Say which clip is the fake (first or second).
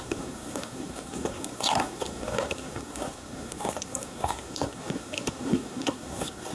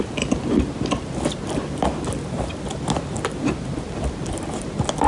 first